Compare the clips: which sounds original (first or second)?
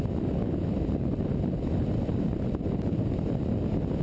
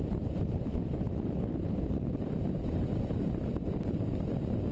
first